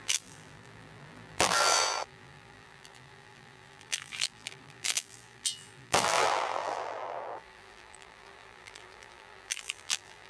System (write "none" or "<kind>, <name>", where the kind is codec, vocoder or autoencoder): vocoder, BigVGAN v2